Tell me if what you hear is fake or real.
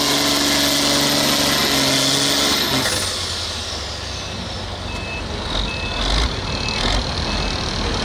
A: real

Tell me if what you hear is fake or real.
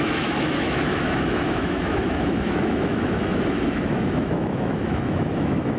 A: fake